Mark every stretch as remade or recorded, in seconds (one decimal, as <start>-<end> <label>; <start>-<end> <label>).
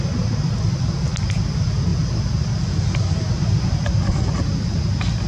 0.0-5.3 recorded